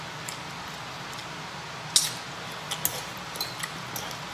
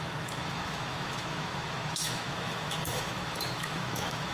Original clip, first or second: first